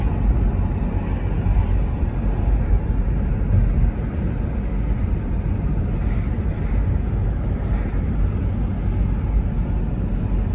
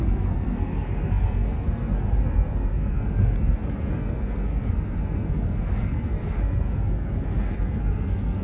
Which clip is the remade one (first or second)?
second